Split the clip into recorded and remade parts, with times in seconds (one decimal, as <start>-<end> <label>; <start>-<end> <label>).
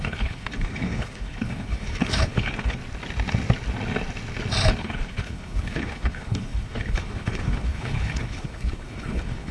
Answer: 0.0-2.8 remade; 2.8-4.8 recorded; 4.8-9.5 remade